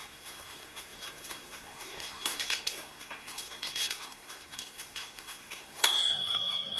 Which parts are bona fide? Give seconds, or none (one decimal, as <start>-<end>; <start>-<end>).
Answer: none